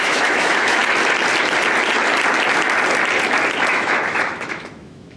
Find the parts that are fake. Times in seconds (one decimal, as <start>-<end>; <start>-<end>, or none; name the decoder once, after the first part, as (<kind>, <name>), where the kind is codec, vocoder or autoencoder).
0.0-0.8 (autoencoder, DAC-VAE); 3.7-5.2